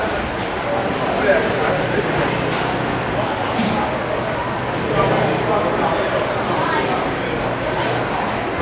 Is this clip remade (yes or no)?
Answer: no